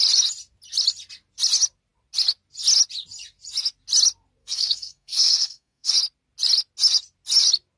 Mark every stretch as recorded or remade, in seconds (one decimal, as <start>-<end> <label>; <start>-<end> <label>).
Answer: 0.0-4.4 recorded; 4.4-5.9 remade; 5.9-7.8 recorded